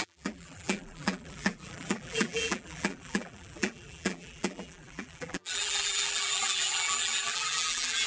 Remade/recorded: remade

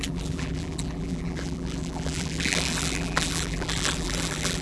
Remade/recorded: remade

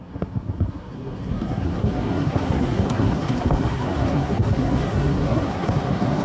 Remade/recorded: remade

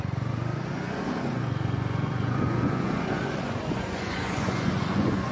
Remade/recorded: remade